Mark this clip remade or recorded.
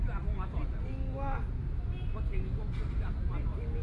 recorded